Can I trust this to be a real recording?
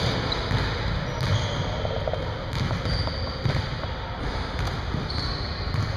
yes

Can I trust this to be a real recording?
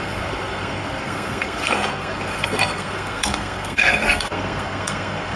no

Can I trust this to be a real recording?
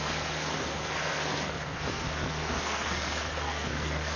no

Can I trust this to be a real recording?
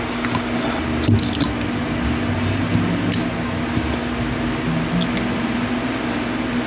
yes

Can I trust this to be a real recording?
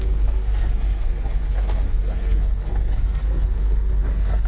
no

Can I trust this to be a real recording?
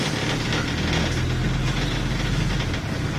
yes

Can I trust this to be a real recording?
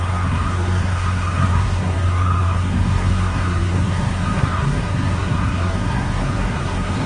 no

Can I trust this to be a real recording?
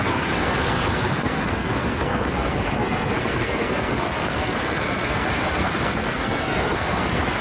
no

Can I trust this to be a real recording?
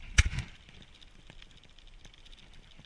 yes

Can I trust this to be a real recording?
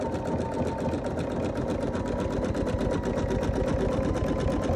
yes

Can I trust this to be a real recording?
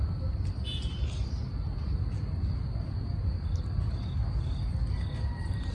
yes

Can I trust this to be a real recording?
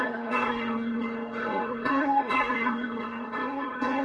no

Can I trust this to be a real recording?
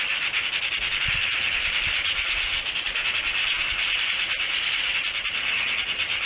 yes